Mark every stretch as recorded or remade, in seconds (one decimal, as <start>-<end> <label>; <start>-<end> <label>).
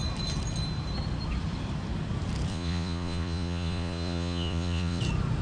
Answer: 0.0-2.5 recorded; 2.5-5.0 remade; 5.0-5.4 recorded